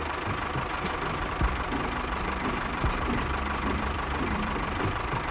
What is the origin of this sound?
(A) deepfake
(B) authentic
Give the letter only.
A